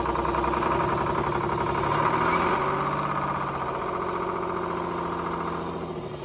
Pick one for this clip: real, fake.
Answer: real